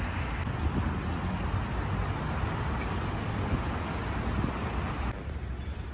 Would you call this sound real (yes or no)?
yes